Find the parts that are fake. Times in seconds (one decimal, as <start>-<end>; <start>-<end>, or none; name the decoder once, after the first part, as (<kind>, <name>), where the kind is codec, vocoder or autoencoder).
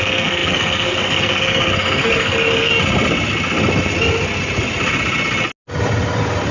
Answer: 0.0-2.7 (codec, SNAC)